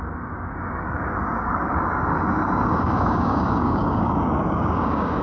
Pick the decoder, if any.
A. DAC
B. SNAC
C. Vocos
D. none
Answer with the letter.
A